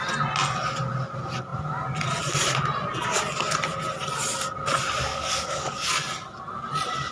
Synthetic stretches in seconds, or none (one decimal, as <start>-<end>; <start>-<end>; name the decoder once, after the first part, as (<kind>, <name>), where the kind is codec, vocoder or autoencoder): 5.1-5.9 (codec, DAC)